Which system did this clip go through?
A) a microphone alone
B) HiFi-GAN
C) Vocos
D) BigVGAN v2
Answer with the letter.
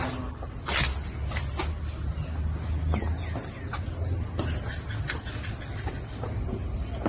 A